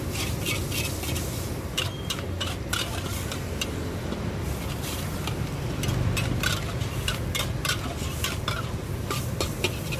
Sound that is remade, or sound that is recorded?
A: recorded